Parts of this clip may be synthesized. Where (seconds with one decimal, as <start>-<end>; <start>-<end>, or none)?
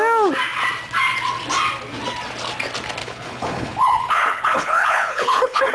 3.0-5.7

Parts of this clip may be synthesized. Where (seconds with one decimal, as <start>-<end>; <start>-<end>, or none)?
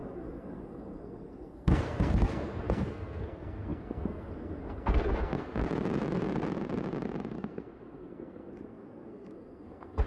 0.0-5.6; 7.3-10.1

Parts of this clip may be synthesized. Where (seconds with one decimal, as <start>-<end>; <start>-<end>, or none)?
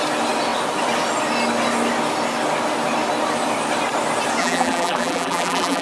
4.4-5.8